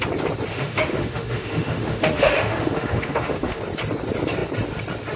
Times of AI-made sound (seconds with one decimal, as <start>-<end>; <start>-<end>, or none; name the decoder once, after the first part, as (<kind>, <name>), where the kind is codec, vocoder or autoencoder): 0.5-3.6 (autoencoder, DAC-VAE)